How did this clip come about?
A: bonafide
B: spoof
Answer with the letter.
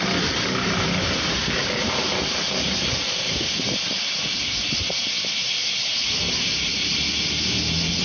A